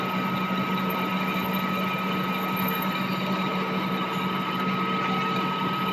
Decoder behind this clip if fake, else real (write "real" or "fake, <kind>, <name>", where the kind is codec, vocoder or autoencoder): real